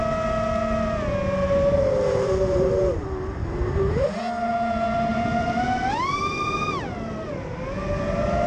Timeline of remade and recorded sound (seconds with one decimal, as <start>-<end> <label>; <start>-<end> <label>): 0.0-1.4 recorded; 1.4-2.7 remade; 2.7-8.5 recorded